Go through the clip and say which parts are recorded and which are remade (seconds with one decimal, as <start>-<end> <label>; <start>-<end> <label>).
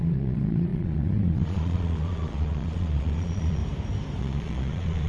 0.0-3.6 remade; 3.6-4.2 recorded; 4.2-5.1 remade